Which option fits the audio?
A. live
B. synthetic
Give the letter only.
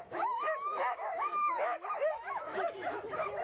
B